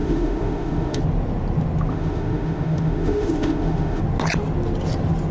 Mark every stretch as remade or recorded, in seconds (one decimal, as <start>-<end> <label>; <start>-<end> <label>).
0.0-1.0 remade; 1.0-1.9 recorded; 1.9-4.0 remade; 4.0-5.3 recorded

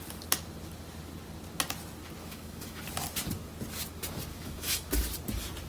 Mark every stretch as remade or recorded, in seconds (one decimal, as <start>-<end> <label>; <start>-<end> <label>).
0.0-2.2 recorded; 2.2-2.8 remade; 2.8-4.3 recorded; 4.3-4.9 remade; 4.9-5.7 recorded